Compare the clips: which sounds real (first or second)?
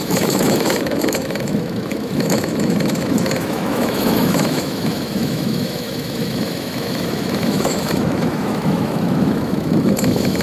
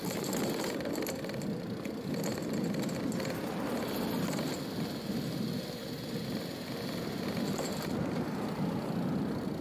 second